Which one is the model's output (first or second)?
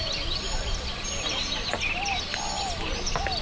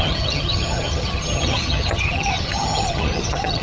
second